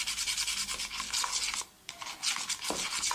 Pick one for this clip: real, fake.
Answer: real